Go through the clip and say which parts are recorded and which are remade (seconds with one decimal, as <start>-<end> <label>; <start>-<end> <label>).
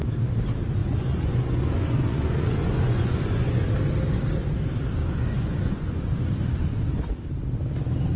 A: 0.0-0.8 recorded; 0.8-3.7 remade; 3.7-5.0 recorded; 5.0-6.8 remade; 6.8-8.2 recorded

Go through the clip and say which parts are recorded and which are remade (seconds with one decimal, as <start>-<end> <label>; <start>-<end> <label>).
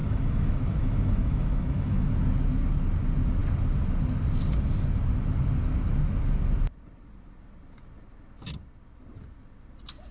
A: 0.0-2.1 remade; 2.1-10.1 recorded